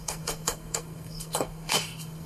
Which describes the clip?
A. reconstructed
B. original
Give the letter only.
A